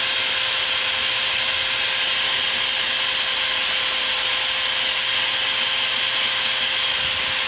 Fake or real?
real